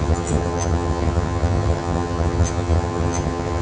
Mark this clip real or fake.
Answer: fake